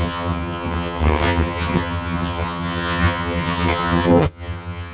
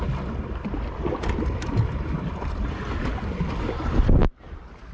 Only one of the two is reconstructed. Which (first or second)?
first